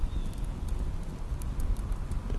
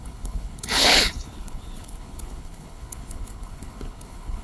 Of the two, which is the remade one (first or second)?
second